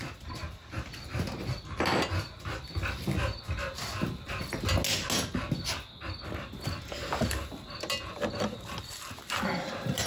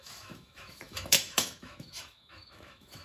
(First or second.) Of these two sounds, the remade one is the second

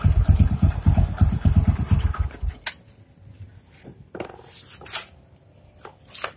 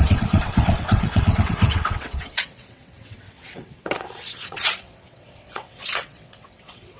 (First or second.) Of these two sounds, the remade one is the second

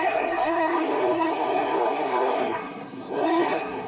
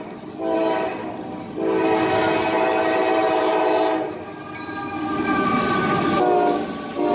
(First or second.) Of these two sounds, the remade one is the first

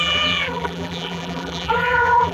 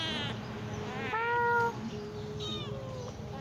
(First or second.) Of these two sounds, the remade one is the first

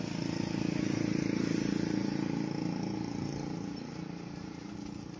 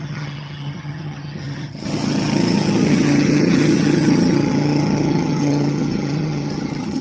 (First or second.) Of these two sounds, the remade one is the second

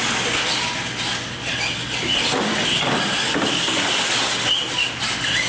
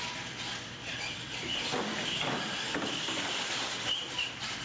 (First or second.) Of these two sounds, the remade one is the second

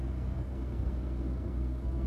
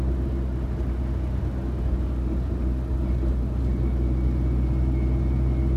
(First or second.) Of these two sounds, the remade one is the first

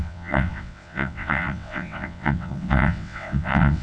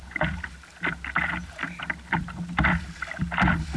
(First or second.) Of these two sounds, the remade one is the first